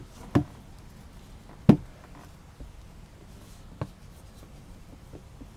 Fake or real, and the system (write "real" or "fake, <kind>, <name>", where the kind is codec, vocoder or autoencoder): real